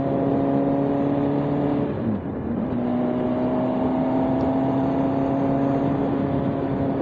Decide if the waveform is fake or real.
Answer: real